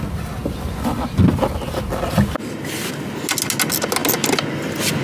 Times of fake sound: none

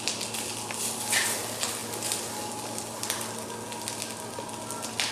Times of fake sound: none

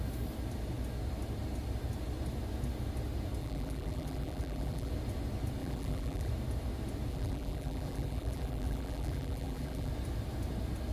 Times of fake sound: 3.4-4.9 (vocoder, BigVGAN v2); 5.6-6.3; 7.1-9.9